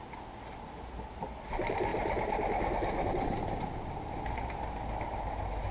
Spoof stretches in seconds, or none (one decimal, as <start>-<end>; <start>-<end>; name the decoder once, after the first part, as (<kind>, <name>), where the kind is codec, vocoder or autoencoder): none